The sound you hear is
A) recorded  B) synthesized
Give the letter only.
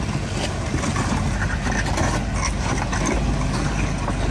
A